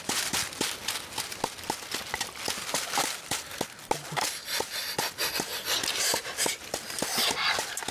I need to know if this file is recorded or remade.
recorded